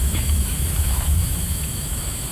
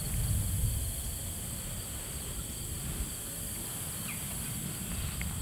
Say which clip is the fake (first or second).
first